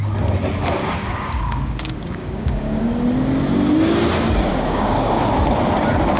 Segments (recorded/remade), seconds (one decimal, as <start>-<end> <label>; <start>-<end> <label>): 0.0-0.8 recorded; 0.8-2.8 remade; 2.8-4.5 recorded; 4.5-5.3 remade; 5.3-6.2 recorded